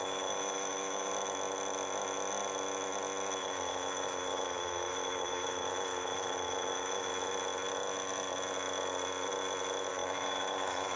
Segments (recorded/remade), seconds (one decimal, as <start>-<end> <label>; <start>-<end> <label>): 0.0-1.1 remade; 1.1-3.4 recorded; 3.4-7.1 remade; 7.1-9.9 recorded; 9.9-11.0 remade